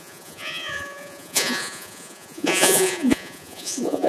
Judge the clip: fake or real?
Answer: fake